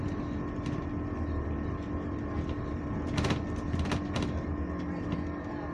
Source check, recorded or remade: recorded